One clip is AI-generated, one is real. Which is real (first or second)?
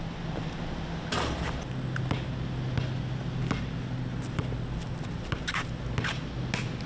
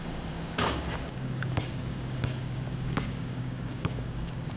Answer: first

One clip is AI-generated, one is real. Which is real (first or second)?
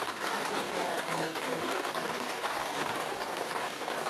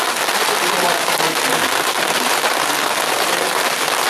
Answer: second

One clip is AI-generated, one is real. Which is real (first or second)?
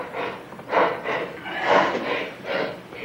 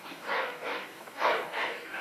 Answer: first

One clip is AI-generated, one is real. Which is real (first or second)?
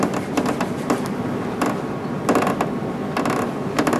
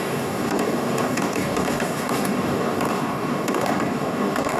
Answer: first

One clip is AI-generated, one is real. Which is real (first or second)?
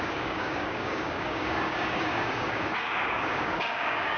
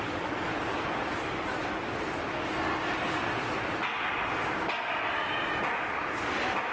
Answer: second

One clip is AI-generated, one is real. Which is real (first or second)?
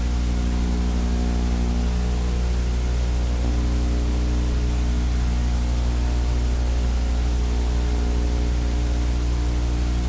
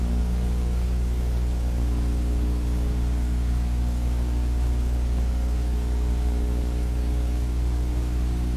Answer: first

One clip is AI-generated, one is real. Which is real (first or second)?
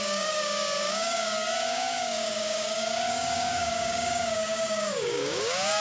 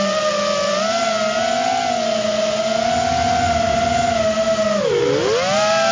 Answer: second